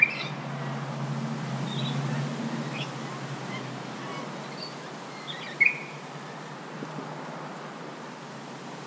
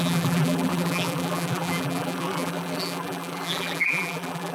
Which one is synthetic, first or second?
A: second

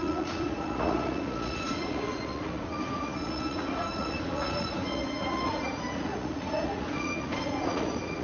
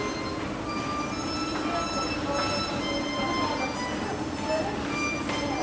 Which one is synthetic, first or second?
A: first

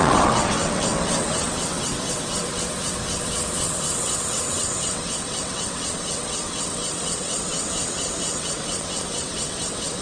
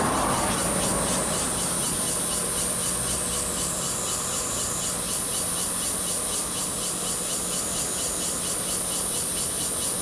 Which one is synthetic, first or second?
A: first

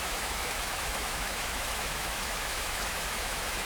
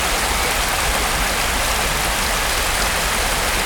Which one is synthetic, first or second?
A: first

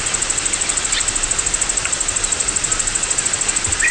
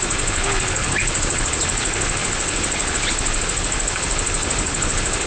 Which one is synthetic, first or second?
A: second